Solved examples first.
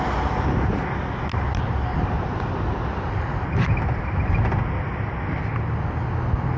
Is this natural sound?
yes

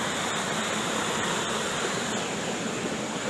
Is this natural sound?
yes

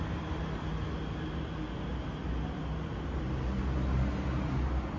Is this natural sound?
yes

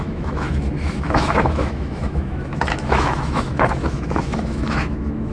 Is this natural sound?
no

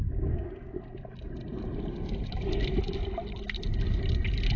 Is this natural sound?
yes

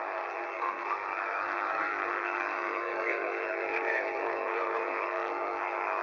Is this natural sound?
no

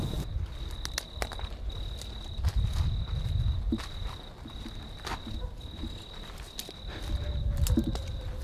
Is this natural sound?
yes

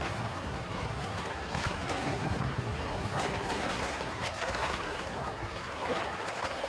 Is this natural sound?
no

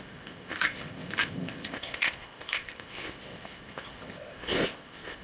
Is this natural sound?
no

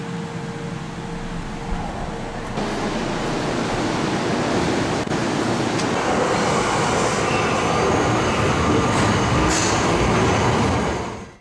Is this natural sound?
yes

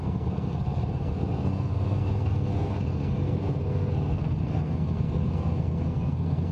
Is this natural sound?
no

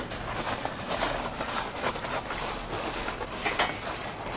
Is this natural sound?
yes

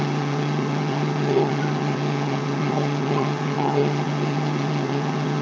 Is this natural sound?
no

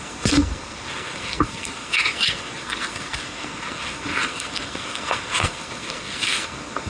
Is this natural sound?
no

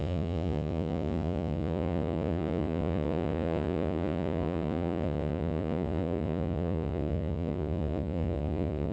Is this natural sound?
no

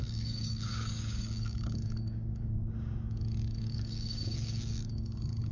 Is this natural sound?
no